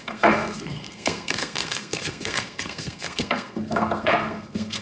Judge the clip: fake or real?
fake